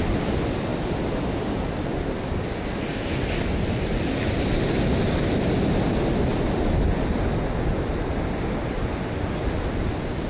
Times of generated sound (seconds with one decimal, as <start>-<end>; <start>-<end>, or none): none